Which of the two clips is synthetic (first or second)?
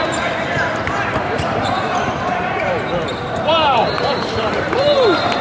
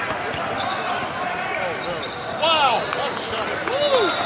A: first